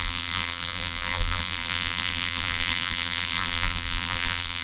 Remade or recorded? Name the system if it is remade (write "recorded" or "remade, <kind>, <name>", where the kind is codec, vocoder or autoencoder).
remade, vocoder, BigVGAN v2